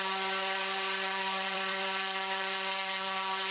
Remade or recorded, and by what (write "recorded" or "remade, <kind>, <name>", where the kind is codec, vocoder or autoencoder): remade, vocoder, BigVGAN v2